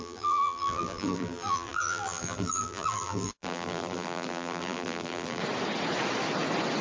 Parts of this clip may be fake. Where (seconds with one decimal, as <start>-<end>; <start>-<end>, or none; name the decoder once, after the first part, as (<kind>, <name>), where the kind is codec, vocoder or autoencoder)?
0.0-5.4 (vocoder, BigVGAN v2)